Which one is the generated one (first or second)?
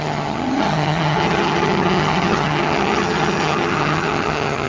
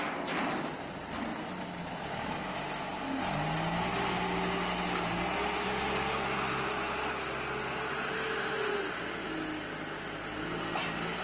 first